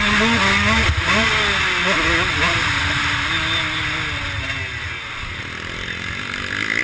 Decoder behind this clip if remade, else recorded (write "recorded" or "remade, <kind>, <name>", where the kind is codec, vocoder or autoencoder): recorded